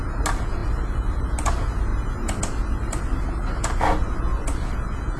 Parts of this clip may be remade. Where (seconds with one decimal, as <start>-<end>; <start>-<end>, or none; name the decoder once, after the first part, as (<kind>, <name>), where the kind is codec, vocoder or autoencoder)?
0.6-1.2 (vocoder, BigVGAN v2)